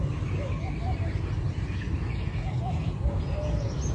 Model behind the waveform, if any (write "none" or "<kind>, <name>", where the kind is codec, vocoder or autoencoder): none